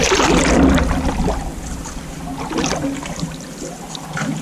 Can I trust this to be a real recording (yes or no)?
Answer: yes